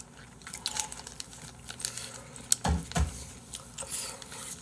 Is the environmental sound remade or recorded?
recorded